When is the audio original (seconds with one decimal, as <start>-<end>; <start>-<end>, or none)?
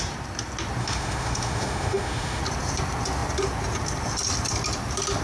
0.0-0.8; 2.4-5.2